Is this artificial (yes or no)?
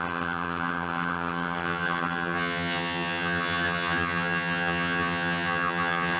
yes